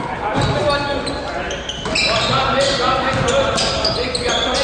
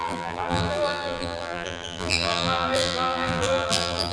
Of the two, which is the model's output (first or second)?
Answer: second